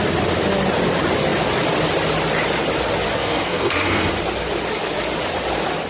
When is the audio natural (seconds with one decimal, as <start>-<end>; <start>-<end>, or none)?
0.0-3.2; 4.1-5.9